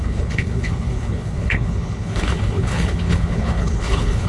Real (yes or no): no